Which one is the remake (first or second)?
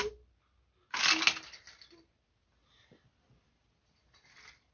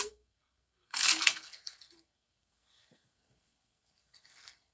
second